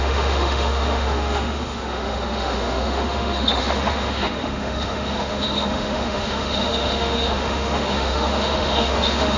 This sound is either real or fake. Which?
fake